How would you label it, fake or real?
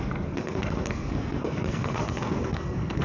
fake